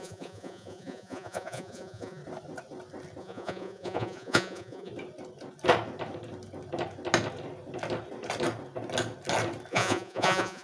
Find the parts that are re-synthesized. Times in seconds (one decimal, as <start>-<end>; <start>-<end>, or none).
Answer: 0.0-2.2; 3.2-4.9; 9.7-10.6